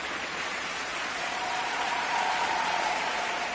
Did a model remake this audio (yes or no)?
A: yes